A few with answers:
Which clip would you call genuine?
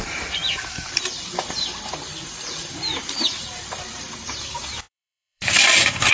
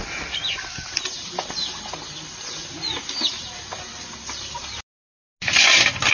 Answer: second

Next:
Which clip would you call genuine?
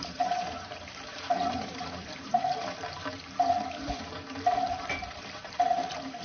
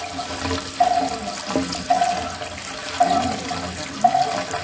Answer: second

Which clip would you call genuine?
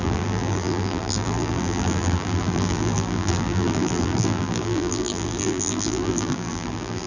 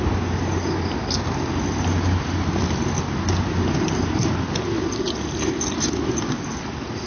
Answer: second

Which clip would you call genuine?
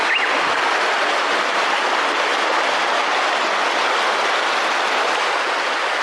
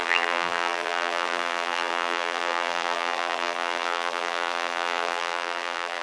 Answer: first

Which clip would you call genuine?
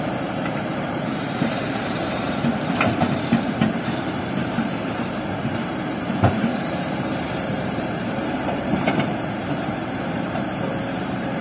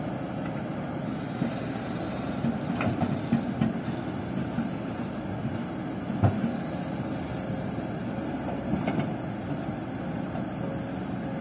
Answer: second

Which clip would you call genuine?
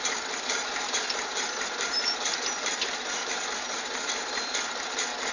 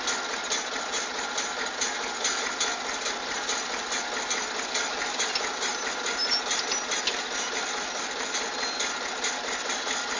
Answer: second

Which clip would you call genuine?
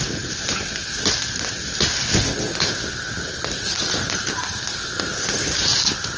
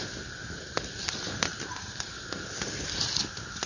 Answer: first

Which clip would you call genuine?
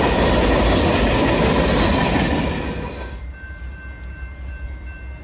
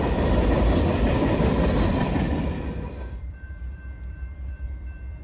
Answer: first